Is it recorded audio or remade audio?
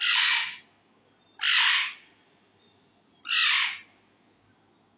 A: recorded